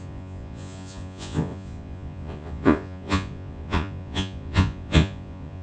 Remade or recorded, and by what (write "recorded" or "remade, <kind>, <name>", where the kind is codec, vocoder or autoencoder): remade, vocoder, Vocos